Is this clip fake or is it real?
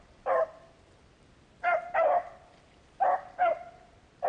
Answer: real